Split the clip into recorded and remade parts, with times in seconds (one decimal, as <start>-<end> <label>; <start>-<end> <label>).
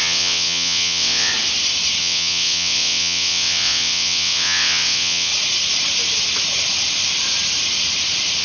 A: 0.0-1.3 remade; 1.3-2.0 recorded; 2.0-5.3 remade; 5.3-8.4 recorded